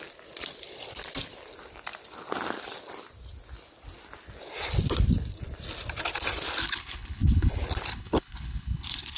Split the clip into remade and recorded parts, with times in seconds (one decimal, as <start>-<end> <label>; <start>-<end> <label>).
0.0-6.6 recorded; 6.6-7.5 remade; 7.5-7.9 recorded; 7.9-9.2 remade